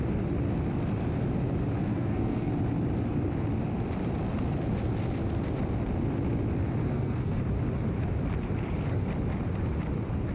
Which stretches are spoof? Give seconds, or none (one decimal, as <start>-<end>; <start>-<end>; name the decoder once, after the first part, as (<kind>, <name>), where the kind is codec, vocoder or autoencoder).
1.9-2.5 (codec, SNAC); 6.8-7.4

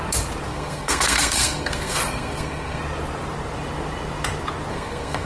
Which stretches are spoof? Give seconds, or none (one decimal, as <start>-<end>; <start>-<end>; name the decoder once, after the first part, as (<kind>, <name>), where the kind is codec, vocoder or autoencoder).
0.5-2.8 (codec, SNAC); 4.7-5.3